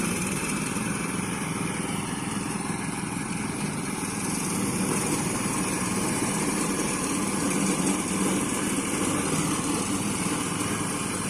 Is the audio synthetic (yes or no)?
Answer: yes